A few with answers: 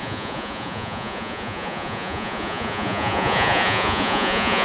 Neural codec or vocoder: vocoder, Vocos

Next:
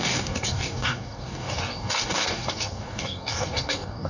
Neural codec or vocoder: codec, DAC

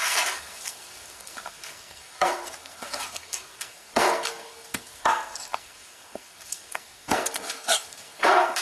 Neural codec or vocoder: codec, SNAC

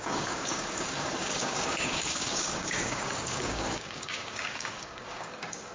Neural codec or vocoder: codec, DAC